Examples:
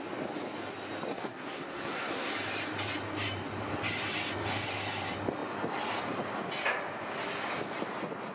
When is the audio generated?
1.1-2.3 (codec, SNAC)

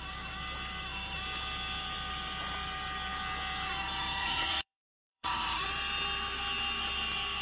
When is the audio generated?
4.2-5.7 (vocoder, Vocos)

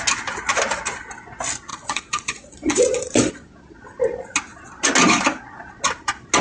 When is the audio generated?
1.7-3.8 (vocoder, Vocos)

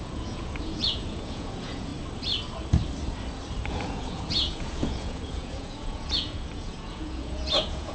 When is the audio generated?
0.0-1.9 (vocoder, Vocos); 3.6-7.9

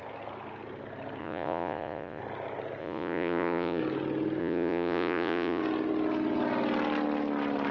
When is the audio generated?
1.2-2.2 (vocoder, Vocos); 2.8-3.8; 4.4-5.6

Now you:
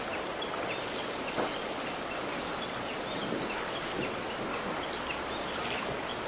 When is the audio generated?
none

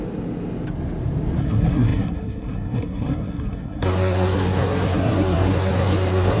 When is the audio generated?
1.4-6.4 (codec, SNAC)